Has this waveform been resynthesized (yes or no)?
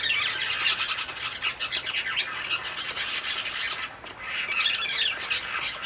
no